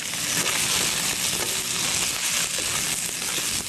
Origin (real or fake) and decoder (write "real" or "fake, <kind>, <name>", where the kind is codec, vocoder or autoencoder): real